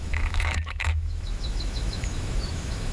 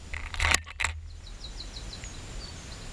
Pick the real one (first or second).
second